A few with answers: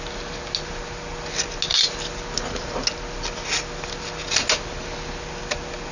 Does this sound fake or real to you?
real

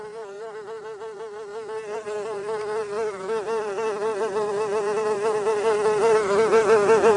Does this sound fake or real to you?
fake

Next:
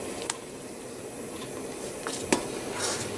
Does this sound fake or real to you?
real